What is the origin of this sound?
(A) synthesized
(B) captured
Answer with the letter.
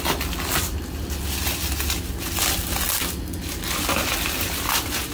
B